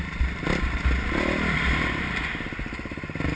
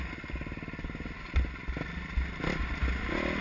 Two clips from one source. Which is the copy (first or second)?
first